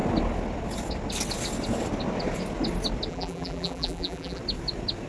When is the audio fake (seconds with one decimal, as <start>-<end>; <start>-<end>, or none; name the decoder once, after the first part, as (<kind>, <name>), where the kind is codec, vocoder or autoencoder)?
3.1-4.4 (vocoder, BigVGAN v2)